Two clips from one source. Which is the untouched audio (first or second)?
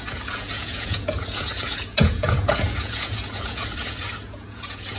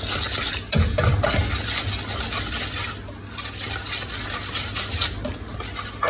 second